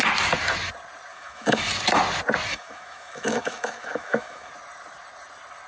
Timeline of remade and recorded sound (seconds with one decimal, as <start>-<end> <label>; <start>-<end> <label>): 0.0-1.1 recorded; 1.1-1.7 remade; 1.7-2.5 recorded; 2.5-4.5 remade; 4.5-5.7 recorded